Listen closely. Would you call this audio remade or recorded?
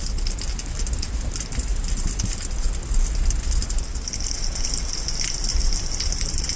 recorded